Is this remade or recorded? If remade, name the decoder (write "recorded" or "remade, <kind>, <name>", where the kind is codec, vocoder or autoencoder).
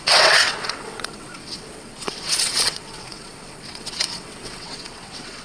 remade, vocoder, WaveNeXt